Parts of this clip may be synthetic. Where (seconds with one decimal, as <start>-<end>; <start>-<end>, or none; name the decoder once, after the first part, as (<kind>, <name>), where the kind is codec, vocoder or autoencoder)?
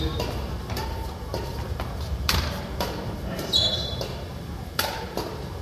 0.0-5.6 (vocoder, BigVGAN v2)